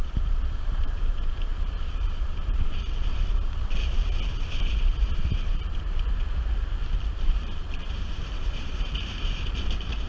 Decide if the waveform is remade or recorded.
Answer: remade